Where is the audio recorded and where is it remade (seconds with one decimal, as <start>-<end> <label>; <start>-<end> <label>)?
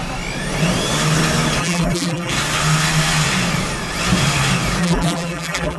0.0-1.6 recorded; 1.6-2.3 remade; 2.3-4.8 recorded; 4.8-5.8 remade